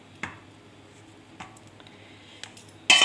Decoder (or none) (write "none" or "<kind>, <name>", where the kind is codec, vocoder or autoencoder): none